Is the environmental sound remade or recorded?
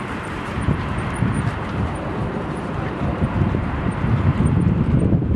remade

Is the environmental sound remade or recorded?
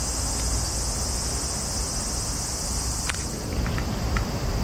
recorded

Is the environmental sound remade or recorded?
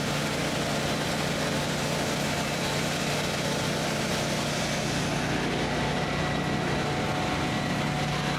recorded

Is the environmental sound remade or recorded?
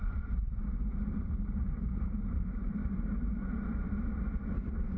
remade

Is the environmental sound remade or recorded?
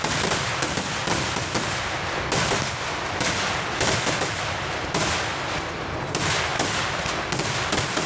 recorded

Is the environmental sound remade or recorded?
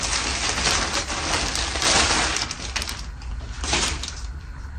recorded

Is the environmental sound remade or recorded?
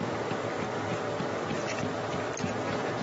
recorded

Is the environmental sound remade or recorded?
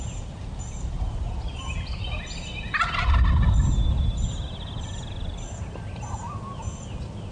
recorded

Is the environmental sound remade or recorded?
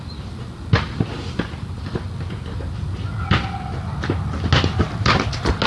recorded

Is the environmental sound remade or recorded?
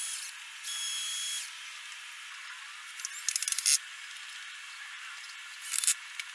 recorded